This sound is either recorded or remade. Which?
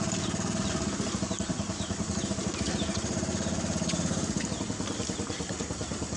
recorded